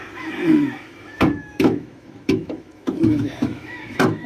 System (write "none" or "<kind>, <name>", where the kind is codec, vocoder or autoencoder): autoencoder, DAC-VAE